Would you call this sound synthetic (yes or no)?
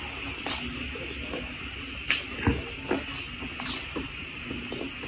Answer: no